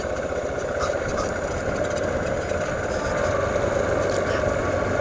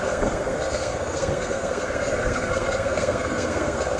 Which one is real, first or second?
first